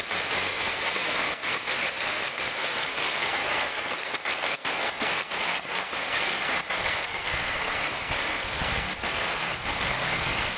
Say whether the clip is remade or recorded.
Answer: remade